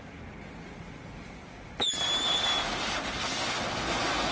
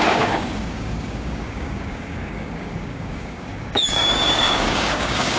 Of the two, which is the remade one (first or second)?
second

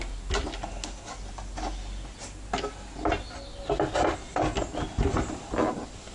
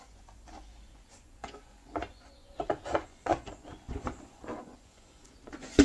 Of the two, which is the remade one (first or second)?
second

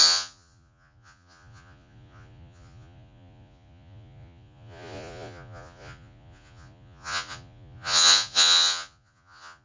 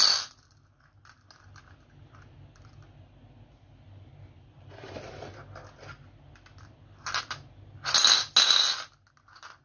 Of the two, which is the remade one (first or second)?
first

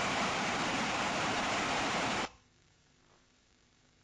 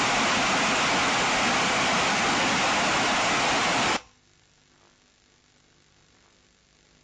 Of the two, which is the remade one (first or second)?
first